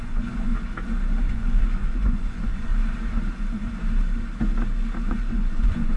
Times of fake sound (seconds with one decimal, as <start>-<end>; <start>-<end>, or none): 0.0-0.5; 1.3-2.7; 5.1-6.0